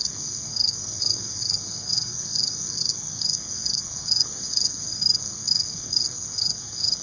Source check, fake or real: fake